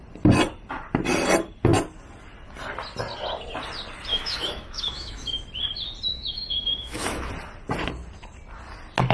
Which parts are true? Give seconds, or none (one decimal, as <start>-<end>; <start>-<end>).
0.0-4.1; 5.4-6.1; 7.3-9.1